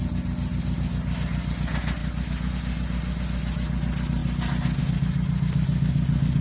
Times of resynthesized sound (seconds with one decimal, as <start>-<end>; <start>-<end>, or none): none